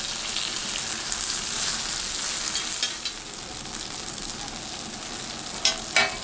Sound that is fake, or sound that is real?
real